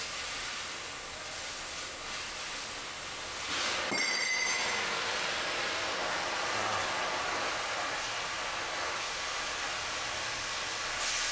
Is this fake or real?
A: real